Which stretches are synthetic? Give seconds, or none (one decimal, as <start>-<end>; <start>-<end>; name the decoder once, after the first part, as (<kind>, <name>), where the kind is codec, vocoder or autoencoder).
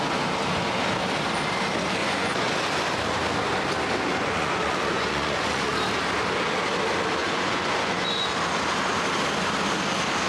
2.0-2.5 (vocoder, Vocos); 4.1-5.7; 7.2-8.3